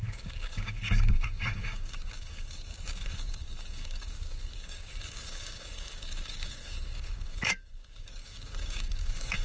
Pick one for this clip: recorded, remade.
remade